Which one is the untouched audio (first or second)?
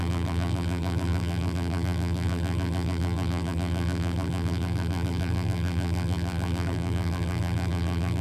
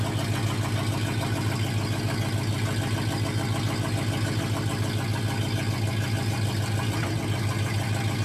second